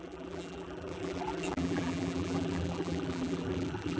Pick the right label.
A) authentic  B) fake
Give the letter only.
B